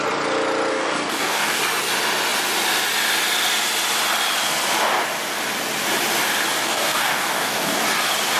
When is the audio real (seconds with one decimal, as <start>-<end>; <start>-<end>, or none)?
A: 0.0-0.7; 1.6-6.6; 7.8-8.4